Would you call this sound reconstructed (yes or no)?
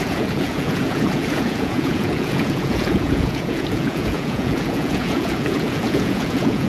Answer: yes